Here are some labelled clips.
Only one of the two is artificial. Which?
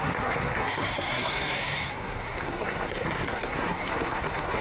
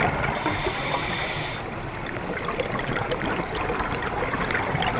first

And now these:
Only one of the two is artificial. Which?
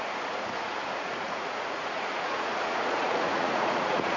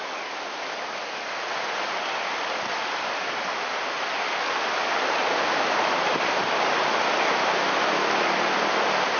first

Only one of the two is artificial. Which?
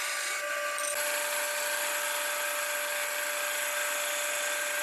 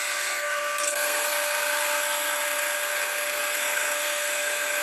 second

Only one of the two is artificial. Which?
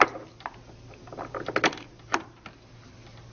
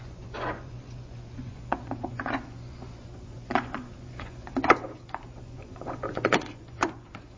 second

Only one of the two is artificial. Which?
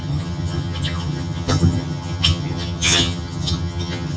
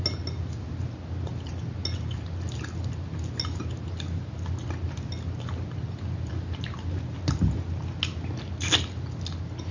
first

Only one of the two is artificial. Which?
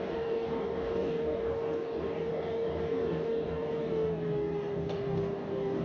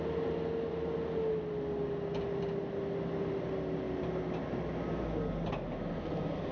first